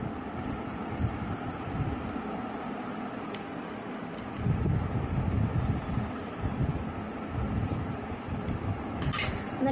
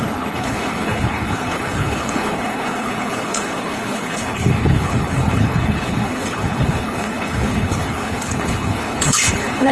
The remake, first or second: second